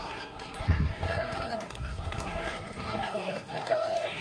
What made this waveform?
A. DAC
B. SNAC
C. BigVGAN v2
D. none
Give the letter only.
B